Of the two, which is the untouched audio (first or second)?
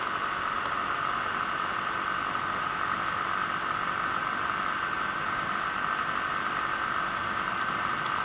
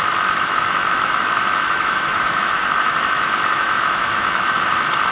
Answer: first